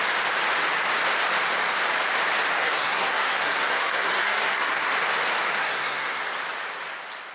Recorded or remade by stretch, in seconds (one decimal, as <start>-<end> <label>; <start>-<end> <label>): 0.0-2.6 recorded; 2.6-4.9 remade; 4.9-5.6 recorded; 5.6-6.2 remade; 6.2-7.3 recorded

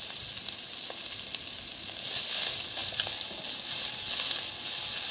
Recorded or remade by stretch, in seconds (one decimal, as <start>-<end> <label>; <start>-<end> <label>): 0.0-5.1 recorded

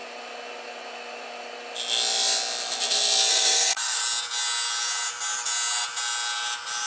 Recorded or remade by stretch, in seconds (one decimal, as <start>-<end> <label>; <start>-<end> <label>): 0.0-3.3 recorded; 3.3-4.0 remade; 4.0-6.9 recorded

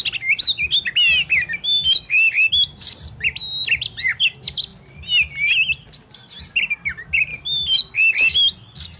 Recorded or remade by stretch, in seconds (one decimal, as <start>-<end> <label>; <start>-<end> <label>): 0.0-9.0 recorded

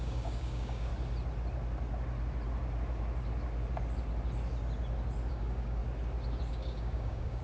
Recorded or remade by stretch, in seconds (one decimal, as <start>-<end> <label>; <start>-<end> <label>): 0.0-0.9 remade; 0.9-5.3 recorded; 5.3-5.8 remade; 5.8-6.5 recorded; 6.5-7.4 remade

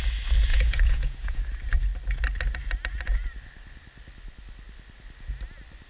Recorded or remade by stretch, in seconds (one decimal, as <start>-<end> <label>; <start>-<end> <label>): 0.0-0.5 recorded; 0.5-1.4 remade; 1.4-5.9 recorded

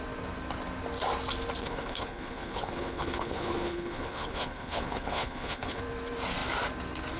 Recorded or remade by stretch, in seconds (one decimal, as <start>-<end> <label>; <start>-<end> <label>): 0.0-1.6 recorded; 1.6-5.8 remade; 5.8-7.2 recorded